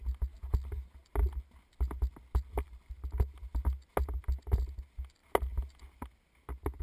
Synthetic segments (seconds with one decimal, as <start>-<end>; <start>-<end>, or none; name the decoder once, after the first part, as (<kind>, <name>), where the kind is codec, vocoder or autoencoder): none